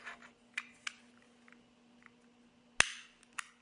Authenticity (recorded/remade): recorded